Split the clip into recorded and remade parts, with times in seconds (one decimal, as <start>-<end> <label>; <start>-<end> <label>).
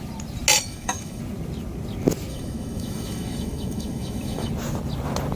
0.0-0.5 recorded; 0.5-1.2 remade; 1.2-2.3 recorded; 2.3-4.5 remade; 4.5-5.4 recorded